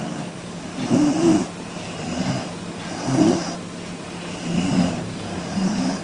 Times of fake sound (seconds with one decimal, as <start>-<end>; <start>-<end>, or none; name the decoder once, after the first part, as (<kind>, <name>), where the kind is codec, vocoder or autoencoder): 0.0-0.7 (codec, DAC); 4.3-6.0